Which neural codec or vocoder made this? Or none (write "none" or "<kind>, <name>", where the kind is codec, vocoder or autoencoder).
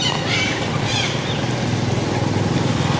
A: none